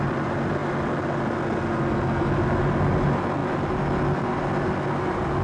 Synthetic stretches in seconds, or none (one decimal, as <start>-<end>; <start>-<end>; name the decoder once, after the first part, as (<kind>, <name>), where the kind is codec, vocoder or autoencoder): none